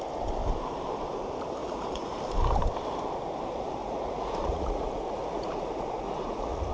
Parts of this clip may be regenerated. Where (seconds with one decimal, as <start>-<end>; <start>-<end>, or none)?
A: 1.6-2.1; 3.8-6.7